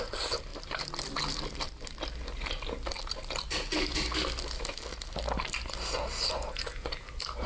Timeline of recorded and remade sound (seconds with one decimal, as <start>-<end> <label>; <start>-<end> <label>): 0.0-0.5 recorded; 0.5-1.2 remade; 1.2-7.5 recorded